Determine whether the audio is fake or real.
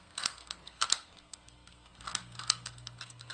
fake